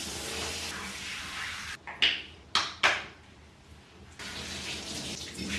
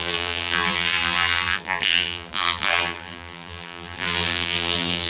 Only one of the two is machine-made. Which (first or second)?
second